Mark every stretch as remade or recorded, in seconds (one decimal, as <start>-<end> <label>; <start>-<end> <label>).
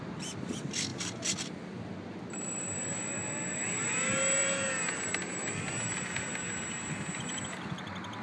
0.0-8.2 recorded